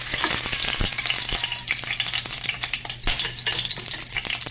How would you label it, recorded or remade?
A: recorded